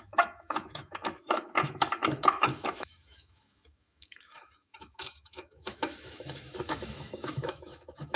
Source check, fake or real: fake